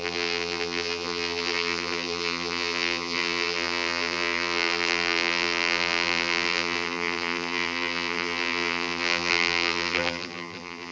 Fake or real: fake